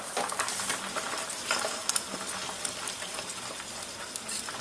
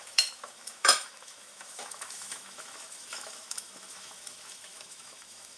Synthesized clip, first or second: second